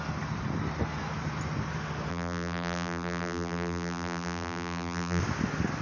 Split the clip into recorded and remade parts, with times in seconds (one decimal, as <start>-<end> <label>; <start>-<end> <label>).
0.0-2.1 recorded; 2.1-5.2 remade; 5.2-5.8 recorded